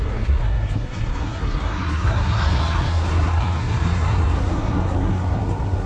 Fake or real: fake